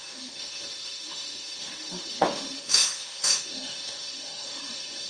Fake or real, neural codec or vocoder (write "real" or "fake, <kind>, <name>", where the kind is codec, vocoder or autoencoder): fake, autoencoder, DAC-VAE